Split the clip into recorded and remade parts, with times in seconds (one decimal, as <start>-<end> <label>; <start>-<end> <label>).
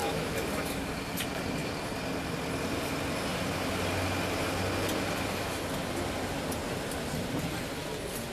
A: 0.0-0.8 remade; 0.8-8.3 recorded